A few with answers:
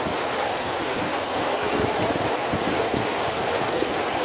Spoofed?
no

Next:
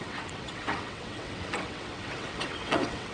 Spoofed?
yes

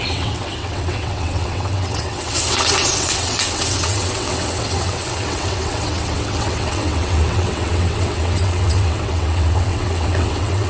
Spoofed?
yes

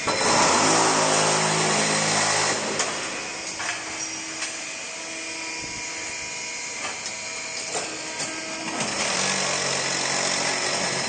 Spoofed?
no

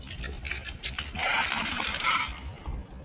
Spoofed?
no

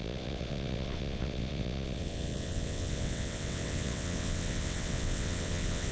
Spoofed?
yes